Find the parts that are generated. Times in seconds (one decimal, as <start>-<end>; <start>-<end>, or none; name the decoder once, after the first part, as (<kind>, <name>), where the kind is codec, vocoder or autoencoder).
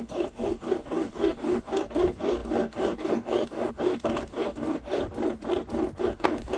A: 0.0-5.0 (codec, DAC); 6.0-6.6